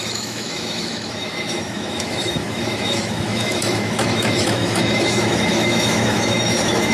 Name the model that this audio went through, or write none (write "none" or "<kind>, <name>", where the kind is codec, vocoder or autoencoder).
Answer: autoencoder, DAC-VAE